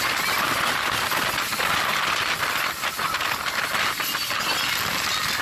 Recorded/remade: recorded